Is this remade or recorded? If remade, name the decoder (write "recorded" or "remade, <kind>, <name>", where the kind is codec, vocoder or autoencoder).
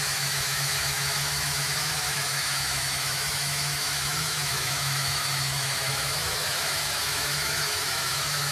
remade, autoencoder, DAC-VAE